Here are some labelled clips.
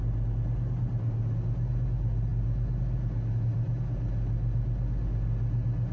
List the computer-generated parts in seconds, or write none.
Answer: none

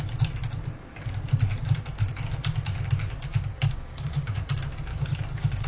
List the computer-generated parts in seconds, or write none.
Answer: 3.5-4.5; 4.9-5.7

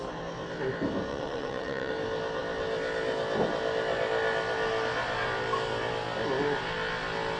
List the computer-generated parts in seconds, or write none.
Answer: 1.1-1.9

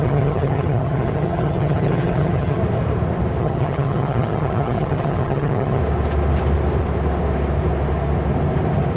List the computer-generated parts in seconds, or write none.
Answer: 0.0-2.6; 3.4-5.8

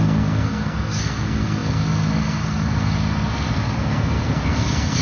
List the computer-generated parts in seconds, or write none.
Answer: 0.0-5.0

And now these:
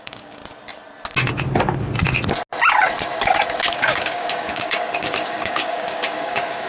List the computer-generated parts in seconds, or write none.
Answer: 0.0-0.4; 3.7-6.7